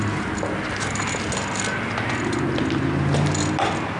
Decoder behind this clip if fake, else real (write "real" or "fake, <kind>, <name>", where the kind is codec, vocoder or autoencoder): real